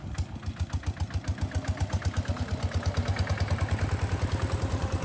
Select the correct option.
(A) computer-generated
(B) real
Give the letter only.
B